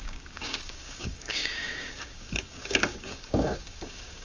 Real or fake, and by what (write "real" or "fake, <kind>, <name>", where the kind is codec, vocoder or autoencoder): fake, codec, DAC